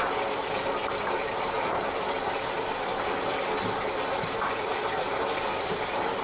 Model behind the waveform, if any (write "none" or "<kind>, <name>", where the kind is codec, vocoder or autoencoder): none